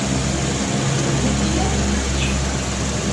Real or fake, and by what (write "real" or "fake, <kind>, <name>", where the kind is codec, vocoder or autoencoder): real